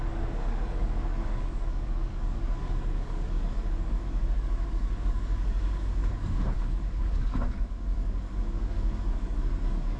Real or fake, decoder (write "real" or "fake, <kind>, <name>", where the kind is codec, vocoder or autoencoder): fake, codec, DAC